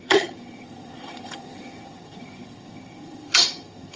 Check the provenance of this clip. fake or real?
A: fake